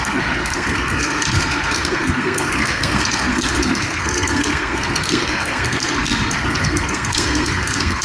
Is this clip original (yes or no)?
no